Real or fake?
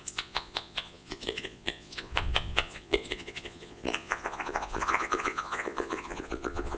fake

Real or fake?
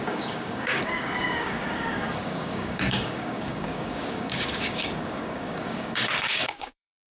fake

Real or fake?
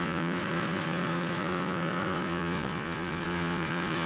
fake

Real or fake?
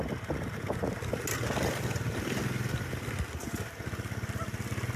real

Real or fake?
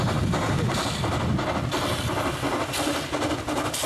real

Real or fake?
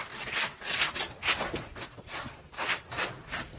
real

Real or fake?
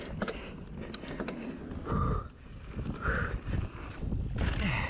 real